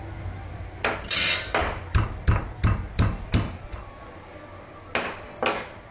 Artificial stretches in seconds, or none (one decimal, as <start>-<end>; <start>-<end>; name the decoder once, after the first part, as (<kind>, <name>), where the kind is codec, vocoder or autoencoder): none